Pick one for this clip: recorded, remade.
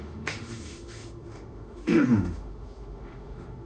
remade